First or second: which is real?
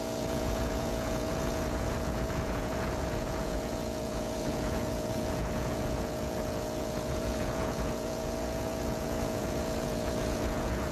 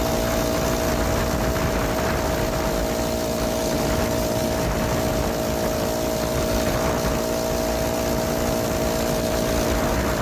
second